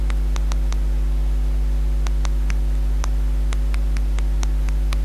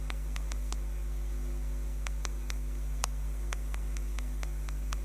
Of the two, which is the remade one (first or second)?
second